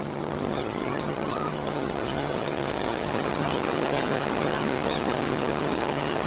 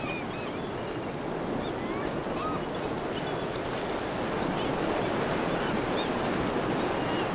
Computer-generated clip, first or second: first